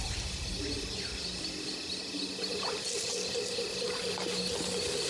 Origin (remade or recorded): recorded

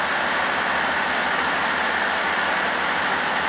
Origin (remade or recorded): recorded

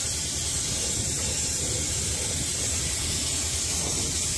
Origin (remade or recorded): recorded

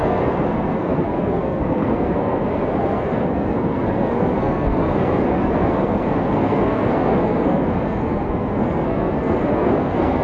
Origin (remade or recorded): remade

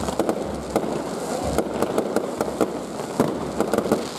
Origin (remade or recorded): recorded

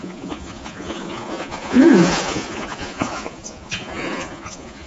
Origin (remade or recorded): remade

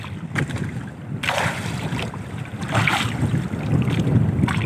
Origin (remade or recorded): remade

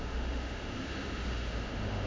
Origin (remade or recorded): remade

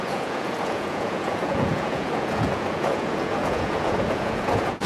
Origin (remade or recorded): remade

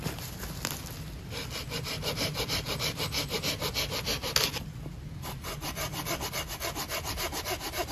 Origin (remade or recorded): recorded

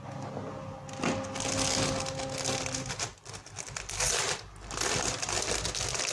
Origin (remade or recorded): recorded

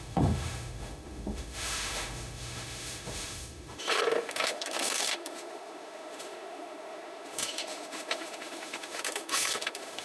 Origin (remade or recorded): remade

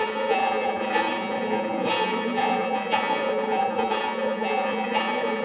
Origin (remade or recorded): remade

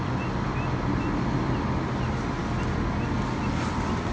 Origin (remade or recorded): recorded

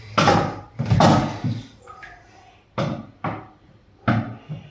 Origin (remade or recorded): recorded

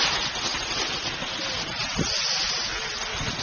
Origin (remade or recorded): recorded